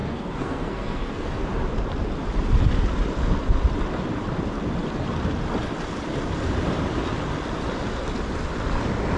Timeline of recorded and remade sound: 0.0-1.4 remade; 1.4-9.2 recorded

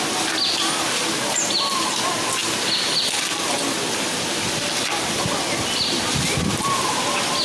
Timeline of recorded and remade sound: 0.0-7.4 recorded

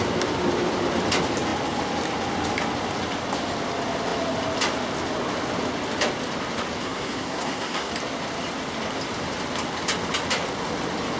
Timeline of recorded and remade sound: 0.0-6.8 recorded; 6.8-7.9 remade; 7.9-11.2 recorded

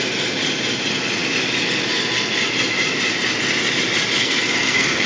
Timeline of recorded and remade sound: 0.0-4.2 recorded; 4.2-5.1 remade

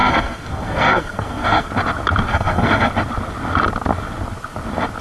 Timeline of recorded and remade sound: 0.0-1.7 remade; 1.7-2.3 recorded; 2.3-2.9 remade; 2.9-5.0 recorded

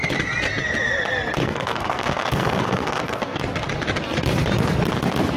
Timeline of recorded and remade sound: 0.0-1.4 recorded; 1.4-3.4 remade; 3.4-5.4 recorded

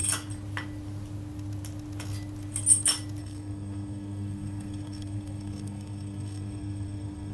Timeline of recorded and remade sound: 0.0-3.2 recorded; 3.2-7.3 remade